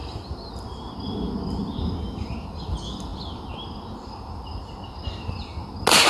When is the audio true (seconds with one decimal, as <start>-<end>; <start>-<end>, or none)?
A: 0.0-6.1